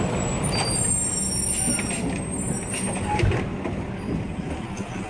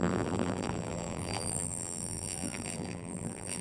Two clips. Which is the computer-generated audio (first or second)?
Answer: second